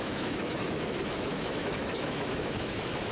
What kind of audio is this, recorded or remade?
remade